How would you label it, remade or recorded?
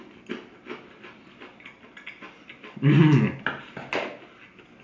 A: recorded